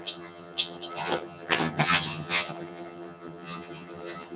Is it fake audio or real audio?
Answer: fake